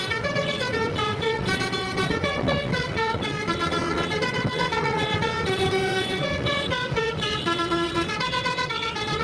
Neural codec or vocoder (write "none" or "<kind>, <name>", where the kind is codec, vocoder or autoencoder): vocoder, WaveNeXt